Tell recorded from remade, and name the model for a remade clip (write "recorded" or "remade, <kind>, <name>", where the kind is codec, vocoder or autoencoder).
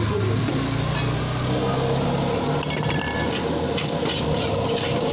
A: recorded